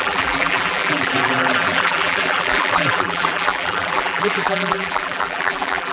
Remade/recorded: remade